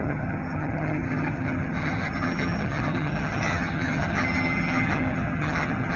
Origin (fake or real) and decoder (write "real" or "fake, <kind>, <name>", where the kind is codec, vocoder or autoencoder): fake, vocoder, HiFi-GAN